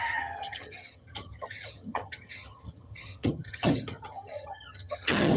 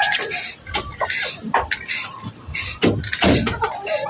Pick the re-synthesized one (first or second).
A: first